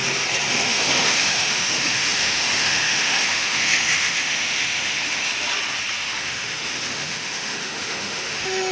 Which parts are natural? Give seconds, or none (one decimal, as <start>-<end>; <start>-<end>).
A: 0.0-0.5; 5.3-6.0